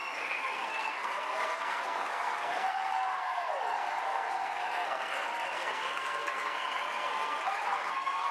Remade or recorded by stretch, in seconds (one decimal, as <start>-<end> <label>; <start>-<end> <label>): 0.0-8.3 remade